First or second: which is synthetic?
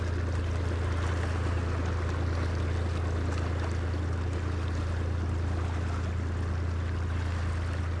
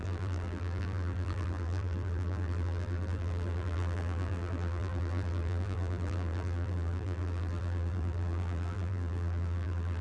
second